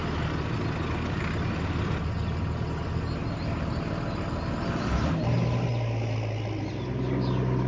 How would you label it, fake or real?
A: real